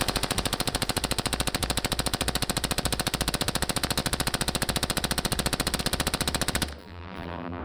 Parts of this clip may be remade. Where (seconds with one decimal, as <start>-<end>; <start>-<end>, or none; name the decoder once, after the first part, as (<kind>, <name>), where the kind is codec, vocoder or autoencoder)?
6.8-7.6 (vocoder, BigVGAN v2)